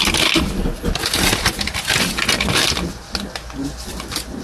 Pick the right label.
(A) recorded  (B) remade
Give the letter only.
A